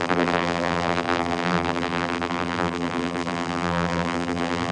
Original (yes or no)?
no